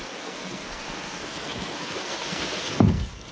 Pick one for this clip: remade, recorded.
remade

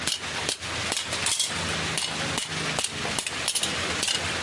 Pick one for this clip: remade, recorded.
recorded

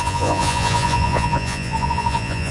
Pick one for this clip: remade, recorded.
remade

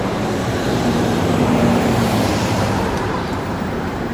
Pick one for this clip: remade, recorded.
remade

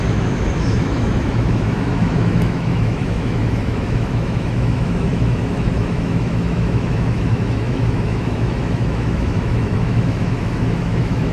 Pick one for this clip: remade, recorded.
remade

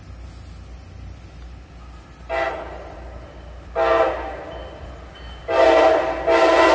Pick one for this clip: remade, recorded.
recorded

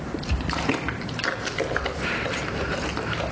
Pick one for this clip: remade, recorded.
recorded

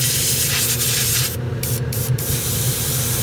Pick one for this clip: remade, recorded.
recorded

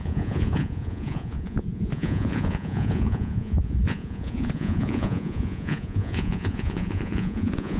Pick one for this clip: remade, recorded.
remade